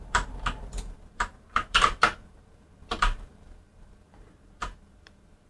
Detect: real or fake fake